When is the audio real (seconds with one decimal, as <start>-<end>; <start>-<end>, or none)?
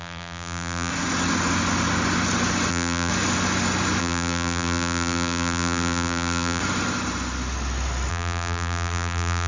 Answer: 0.9-2.7; 3.1-4.0; 6.6-8.1